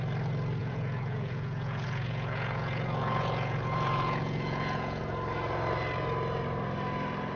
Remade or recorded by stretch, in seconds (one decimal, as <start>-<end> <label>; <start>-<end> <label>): 0.0-0.6 recorded; 0.6-5.0 remade; 5.0-7.4 recorded